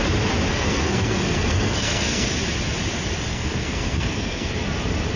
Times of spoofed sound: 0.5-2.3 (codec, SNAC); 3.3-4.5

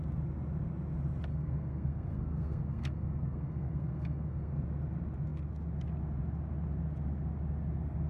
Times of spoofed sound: 1.3-4.6 (codec, SNAC)